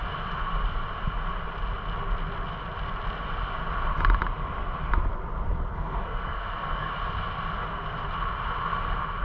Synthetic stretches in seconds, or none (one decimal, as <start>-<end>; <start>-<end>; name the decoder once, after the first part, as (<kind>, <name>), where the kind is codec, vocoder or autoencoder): 5.7-6.9 (codec, SNAC)

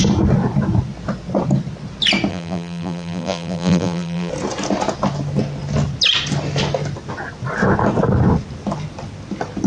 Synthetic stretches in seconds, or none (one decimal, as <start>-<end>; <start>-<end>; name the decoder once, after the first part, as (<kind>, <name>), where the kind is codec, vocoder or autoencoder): 2.3-4.3 (vocoder, BigVGAN v2)

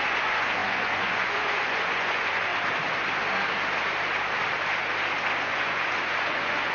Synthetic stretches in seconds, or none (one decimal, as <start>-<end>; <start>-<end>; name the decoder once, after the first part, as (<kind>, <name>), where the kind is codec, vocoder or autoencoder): 0.0-2.5 (vocoder, Vocos); 5.4-6.7

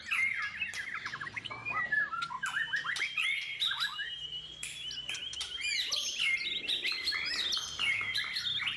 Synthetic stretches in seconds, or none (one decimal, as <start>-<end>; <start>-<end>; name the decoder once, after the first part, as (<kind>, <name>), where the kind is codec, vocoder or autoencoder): none

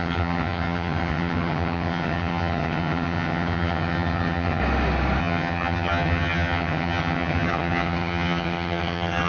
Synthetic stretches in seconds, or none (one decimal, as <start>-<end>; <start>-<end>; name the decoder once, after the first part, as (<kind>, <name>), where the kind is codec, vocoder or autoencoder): 0.0-4.6 (vocoder, HiFi-GAN); 5.2-9.3